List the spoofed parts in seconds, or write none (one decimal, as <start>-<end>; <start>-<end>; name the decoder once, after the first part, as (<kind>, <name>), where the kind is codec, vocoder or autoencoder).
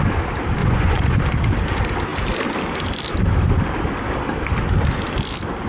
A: 0.6-1.2 (vocoder, Vocos)